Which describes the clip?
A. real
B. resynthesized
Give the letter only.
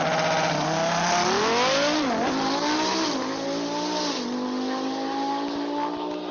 A